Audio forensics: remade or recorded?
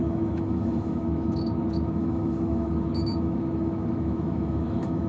remade